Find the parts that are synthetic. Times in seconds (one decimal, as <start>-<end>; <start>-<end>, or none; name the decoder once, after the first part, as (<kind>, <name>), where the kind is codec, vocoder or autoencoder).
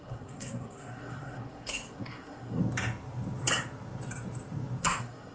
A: 0.0-2.6 (codec, SNAC); 4.8-5.3